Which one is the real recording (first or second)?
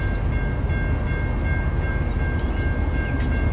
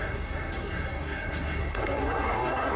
first